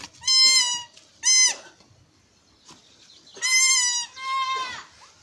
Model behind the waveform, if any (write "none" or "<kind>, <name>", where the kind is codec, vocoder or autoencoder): none